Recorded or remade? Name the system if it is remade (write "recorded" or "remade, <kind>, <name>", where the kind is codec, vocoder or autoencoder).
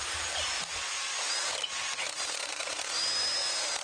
recorded